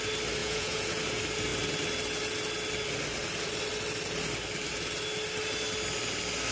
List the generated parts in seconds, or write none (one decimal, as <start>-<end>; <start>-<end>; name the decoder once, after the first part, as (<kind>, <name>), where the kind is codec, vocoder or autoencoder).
0.4-1.0 (vocoder, Vocos)